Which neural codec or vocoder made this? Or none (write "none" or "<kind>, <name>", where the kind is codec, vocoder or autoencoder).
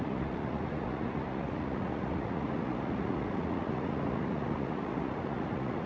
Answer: vocoder, Vocos